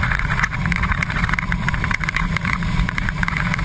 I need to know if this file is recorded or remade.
remade